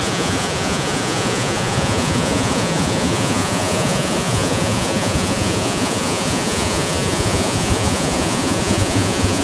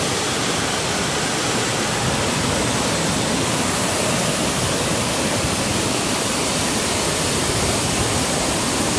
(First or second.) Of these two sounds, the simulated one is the first